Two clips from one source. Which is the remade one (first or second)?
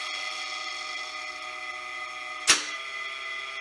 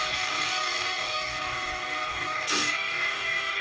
second